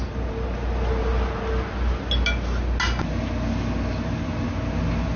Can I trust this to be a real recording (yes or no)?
yes